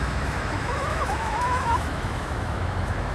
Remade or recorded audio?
remade